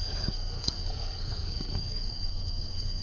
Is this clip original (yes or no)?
no